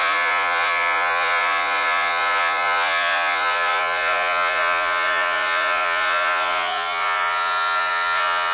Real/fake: fake